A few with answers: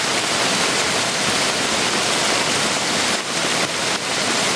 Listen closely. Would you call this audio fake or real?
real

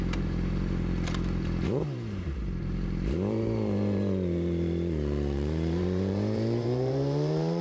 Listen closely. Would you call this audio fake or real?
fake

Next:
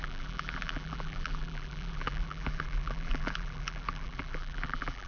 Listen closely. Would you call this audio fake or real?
fake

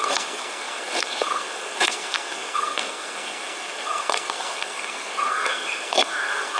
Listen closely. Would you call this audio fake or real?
fake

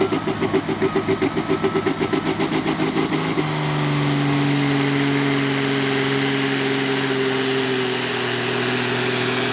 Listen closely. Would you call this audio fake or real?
real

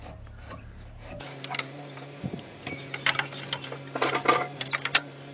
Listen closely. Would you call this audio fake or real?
real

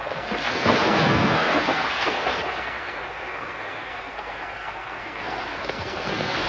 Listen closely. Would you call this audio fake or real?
fake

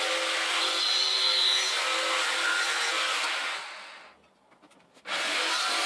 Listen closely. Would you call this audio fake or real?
real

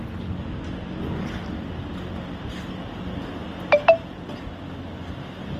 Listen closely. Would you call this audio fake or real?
real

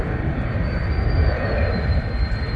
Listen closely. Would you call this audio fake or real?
fake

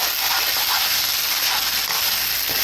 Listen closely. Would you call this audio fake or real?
real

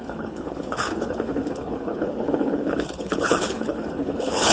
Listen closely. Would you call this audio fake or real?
fake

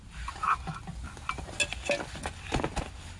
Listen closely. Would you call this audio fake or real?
real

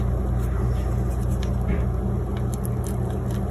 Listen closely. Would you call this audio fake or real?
real